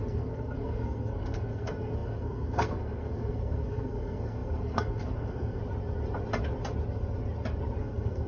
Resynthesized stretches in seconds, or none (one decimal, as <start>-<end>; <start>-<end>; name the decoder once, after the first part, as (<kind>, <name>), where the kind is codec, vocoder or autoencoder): 0.0-5.6 (codec, SNAC); 7.8-8.3